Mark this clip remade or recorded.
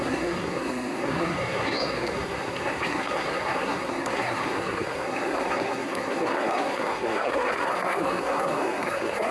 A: remade